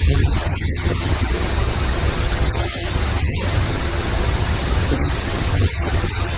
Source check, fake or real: fake